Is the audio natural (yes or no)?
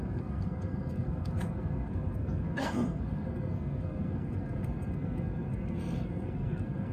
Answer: no